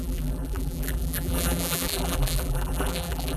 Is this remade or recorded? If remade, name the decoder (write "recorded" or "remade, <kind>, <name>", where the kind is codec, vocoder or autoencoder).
remade, vocoder, BigVGAN v2